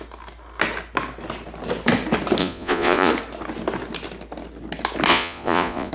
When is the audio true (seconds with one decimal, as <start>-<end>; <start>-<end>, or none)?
0.0-2.4; 3.1-5.1